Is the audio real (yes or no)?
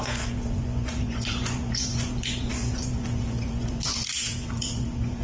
no